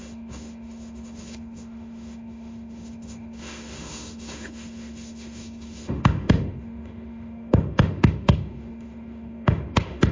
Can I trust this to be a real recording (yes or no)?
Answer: no